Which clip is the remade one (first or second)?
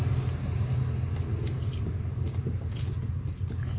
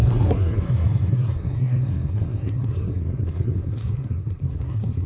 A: second